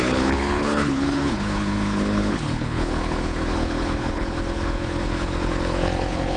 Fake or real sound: fake